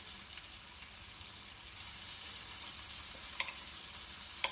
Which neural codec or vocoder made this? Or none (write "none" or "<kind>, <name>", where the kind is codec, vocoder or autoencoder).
none